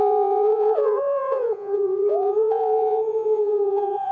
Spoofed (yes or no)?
yes